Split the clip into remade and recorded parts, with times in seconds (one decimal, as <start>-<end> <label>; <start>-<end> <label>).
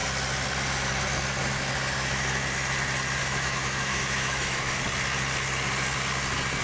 0.0-3.2 recorded; 3.2-4.8 remade; 4.8-6.6 recorded